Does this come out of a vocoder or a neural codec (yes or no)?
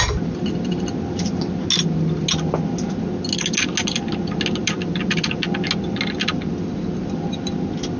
no